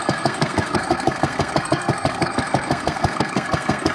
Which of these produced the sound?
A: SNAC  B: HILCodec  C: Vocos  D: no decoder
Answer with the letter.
A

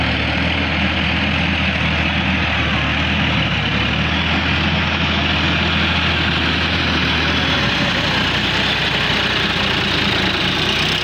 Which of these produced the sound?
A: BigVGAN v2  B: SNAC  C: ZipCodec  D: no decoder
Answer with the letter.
D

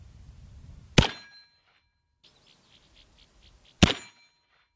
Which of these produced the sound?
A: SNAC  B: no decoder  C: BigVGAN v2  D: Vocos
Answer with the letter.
B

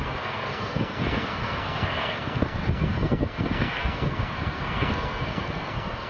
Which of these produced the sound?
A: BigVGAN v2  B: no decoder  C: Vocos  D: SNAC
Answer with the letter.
D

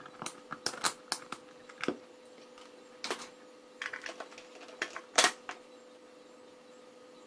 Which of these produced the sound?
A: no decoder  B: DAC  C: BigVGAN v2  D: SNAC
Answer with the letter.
A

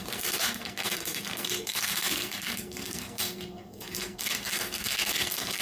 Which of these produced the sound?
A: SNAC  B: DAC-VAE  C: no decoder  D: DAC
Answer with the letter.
A